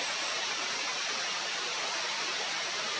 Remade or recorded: recorded